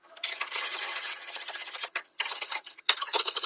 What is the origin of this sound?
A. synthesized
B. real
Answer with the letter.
A